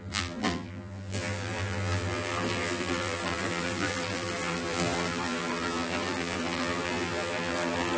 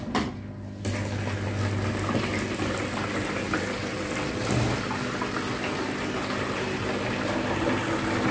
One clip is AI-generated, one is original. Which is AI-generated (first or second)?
first